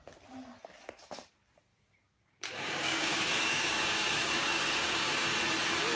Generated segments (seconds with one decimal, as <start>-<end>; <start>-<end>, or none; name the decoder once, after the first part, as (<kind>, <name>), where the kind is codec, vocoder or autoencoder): 1.7-5.3 (codec, DAC)